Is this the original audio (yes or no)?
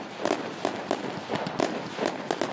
yes